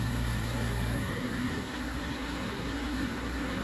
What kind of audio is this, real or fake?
fake